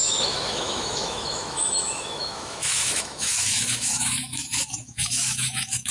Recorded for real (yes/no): no